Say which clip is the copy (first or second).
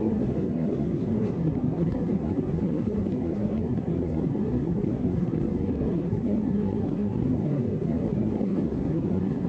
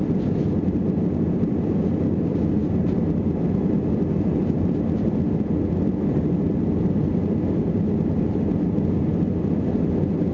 first